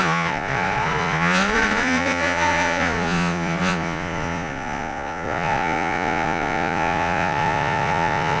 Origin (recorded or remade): remade